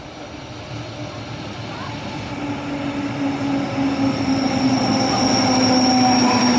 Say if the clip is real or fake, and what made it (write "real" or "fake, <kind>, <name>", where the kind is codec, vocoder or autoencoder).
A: real